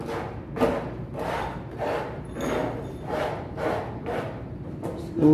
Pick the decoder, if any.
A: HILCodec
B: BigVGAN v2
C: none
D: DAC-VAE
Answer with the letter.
C